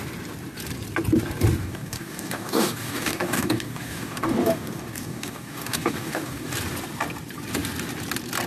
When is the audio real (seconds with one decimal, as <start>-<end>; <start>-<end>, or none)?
0.0-1.6; 6.5-8.5